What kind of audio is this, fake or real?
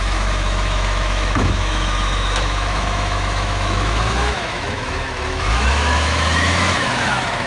fake